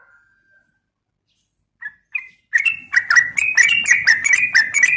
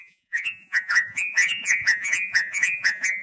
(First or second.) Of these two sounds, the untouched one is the first